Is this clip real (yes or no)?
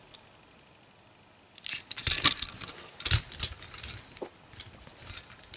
yes